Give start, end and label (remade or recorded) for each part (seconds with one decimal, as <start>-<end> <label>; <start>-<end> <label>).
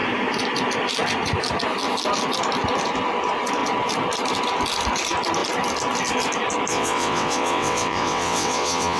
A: 0.0-6.7 recorded; 6.7-9.0 remade